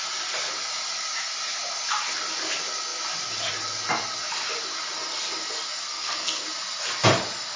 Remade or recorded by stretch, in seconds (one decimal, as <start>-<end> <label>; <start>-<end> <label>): 0.0-5.8 recorded; 5.8-6.4 remade; 6.4-7.6 recorded